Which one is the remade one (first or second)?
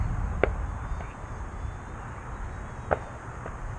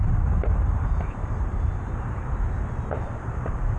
second